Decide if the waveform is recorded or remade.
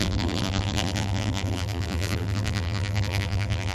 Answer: remade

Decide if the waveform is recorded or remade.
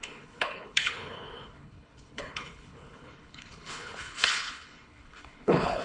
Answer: remade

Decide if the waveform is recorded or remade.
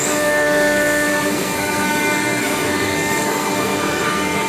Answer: remade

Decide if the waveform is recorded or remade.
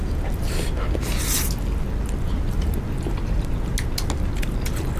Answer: recorded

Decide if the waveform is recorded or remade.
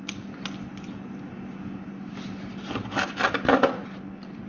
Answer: recorded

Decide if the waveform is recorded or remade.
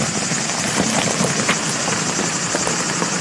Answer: remade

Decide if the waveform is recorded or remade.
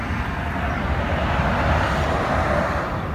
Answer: recorded